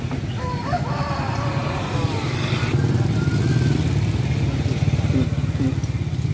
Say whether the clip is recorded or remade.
recorded